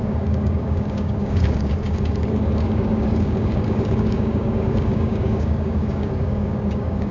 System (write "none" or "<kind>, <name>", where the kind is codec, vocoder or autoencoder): codec, DAC